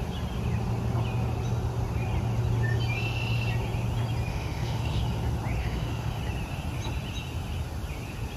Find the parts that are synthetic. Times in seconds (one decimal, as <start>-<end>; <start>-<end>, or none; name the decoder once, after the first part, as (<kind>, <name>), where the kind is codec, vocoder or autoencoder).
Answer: 4.3-5.0 (autoencoder, DAC-VAE); 5.6-6.2